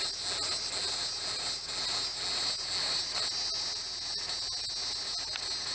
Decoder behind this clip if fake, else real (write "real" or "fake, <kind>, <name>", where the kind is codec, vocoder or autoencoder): real